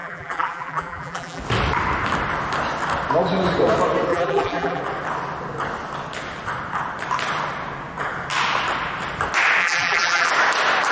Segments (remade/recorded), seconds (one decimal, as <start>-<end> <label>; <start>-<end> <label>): 0.0-1.4 remade; 1.4-4.1 recorded; 4.1-4.8 remade; 4.8-9.6 recorded; 9.6-10.3 remade; 10.3-10.9 recorded